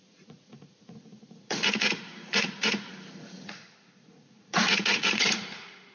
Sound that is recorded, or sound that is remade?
remade